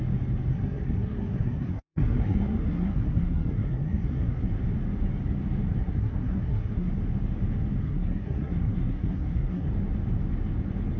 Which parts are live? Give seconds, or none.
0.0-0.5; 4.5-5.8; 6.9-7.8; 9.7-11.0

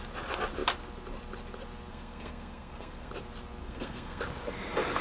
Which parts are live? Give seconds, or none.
0.0-1.9; 3.1-3.6; 4.2-5.0

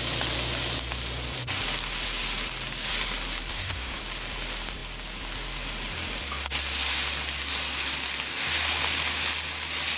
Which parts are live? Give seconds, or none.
0.0-3.5; 4.0-10.0

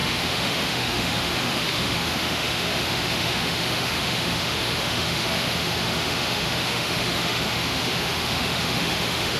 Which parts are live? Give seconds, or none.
none